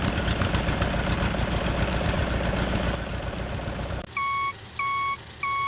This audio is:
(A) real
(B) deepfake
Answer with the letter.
A